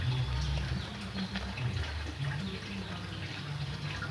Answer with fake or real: real